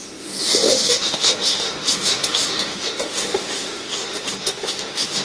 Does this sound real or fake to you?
fake